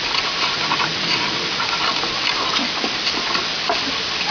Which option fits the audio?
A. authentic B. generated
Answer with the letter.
A